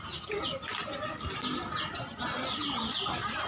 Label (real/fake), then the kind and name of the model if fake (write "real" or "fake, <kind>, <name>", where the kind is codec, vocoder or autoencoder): real